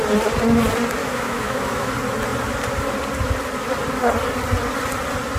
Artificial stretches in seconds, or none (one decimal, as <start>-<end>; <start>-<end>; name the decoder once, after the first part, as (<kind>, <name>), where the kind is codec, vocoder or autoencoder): 1.0-1.9 (autoencoder, DAC-VAE)